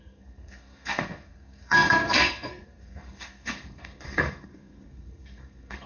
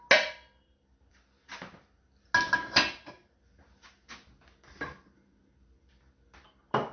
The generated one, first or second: first